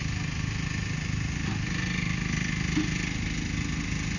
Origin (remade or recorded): recorded